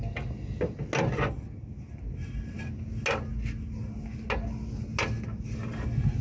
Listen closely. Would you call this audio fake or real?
real